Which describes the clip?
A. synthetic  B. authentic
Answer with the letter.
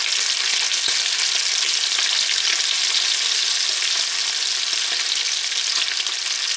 B